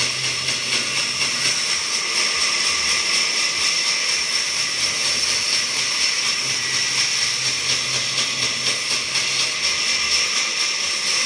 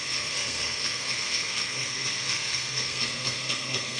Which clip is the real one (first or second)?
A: first